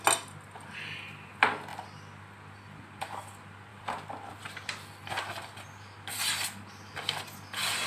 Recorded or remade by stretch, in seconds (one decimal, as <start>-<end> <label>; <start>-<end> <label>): 0.0-3.7 recorded; 3.7-4.3 remade; 4.3-7.9 recorded